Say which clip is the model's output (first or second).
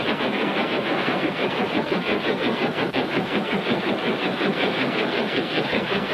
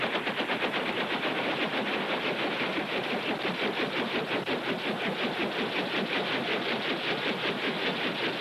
first